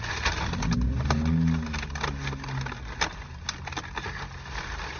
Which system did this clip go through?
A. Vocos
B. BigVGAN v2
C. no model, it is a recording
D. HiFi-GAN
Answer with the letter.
C